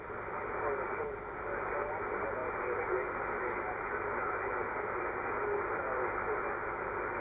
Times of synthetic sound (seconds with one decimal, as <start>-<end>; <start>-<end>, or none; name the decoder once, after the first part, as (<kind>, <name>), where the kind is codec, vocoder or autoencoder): none